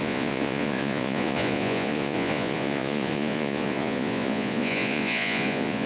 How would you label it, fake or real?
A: fake